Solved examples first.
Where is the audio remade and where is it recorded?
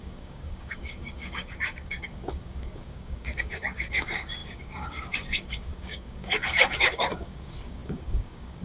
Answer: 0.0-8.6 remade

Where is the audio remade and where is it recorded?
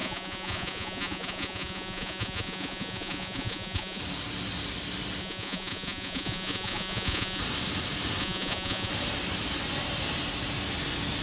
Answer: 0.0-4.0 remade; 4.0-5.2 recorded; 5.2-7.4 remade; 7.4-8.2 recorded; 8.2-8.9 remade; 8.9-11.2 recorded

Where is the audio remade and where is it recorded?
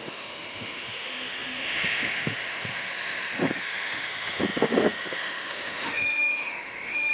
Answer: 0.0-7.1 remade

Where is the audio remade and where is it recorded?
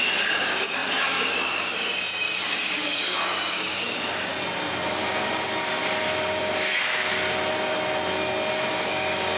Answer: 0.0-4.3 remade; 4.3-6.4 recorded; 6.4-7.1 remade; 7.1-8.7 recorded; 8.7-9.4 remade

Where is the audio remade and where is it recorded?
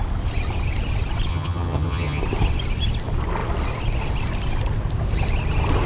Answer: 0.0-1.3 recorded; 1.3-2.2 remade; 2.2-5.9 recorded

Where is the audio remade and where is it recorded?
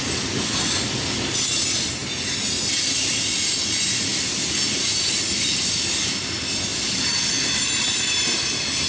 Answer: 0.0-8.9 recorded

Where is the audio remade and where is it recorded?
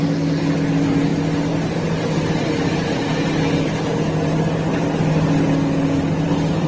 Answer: 0.0-6.7 recorded